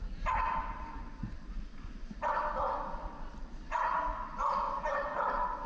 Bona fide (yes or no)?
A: yes